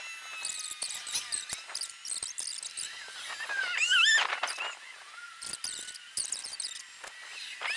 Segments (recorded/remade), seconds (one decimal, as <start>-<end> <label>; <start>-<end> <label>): 0.0-7.8 recorded